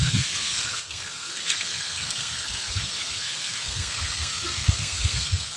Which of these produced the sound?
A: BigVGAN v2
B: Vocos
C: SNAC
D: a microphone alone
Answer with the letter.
C